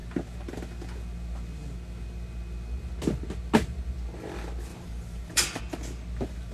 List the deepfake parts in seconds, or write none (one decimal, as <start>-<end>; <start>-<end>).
4.7-5.6